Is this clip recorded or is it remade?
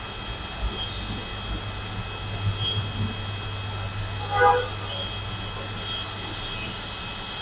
recorded